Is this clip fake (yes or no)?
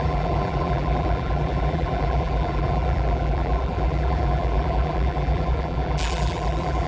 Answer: yes